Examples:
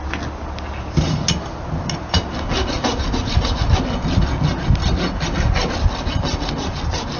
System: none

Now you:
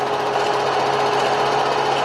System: none